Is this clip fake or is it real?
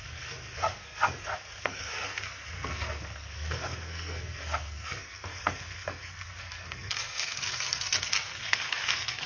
fake